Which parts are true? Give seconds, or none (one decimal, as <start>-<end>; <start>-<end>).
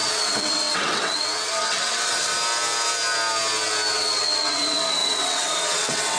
2.3-3.9